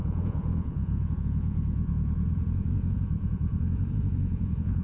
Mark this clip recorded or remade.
remade